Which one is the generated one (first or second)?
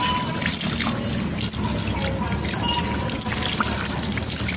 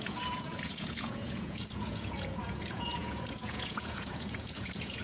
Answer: second